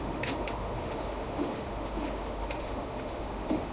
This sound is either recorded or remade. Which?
remade